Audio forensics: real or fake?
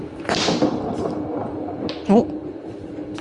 real